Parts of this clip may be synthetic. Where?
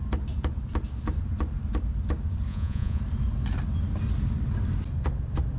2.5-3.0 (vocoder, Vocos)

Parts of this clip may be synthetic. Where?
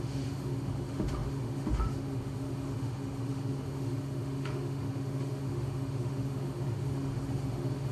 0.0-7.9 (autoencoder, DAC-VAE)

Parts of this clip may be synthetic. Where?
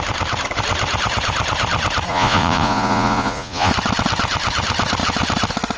2.1-3.7 (vocoder, Vocos)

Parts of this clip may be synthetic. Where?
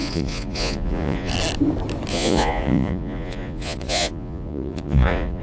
0.0-1.3 (vocoder, Vocos); 2.1-5.4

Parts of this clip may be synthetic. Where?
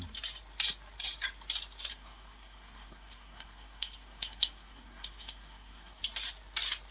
1.9-6.0 (codec, SNAC)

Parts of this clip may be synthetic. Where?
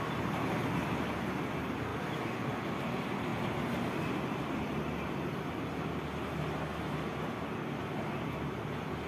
none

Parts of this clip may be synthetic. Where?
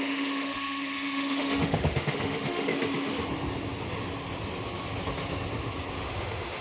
0.0-2.7 (autoencoder, DAC-VAE); 5.9-6.6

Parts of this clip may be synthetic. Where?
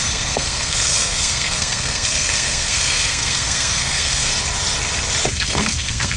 0.0-4.3 (codec, SNAC); 5.3-6.2